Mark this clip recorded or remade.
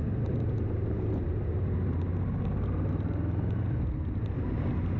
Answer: recorded